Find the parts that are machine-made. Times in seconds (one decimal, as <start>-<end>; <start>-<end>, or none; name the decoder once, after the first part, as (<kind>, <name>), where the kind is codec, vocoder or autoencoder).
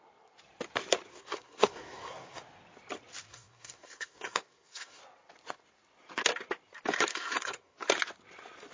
1.1-2.4 (codec, SNAC); 3.3-5.0; 7.1-7.8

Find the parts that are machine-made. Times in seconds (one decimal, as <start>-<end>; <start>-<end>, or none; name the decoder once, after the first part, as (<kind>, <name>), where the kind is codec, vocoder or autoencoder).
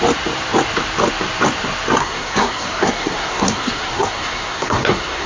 2.0-5.3 (codec, SNAC)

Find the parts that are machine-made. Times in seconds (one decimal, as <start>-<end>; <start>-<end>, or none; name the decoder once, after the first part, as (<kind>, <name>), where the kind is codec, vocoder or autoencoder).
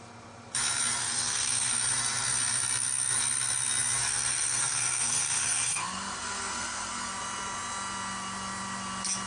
1.0-1.7 (codec, SNAC); 4.1-7.1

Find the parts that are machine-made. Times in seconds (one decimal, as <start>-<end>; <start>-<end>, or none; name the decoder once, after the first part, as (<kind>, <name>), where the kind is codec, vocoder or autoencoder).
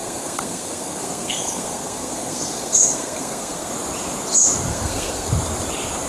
0.0-3.7 (codec, SNAC); 4.7-5.3